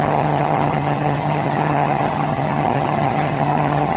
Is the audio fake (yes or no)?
yes